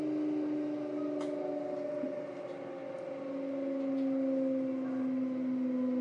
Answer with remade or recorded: recorded